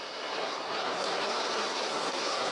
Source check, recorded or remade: remade